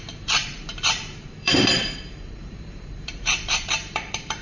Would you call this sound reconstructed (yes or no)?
yes